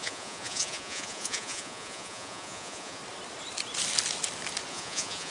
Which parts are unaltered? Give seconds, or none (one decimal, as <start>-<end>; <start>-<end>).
3.0-4.7